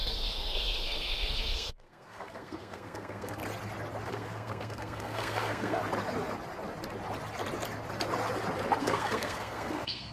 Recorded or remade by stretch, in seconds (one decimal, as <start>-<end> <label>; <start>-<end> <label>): 0.0-3.4 remade; 3.4-4.1 recorded; 4.1-5.8 remade; 5.8-8.8 recorded; 8.8-10.1 remade